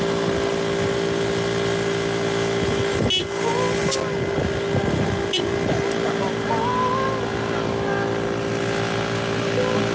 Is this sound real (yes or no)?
yes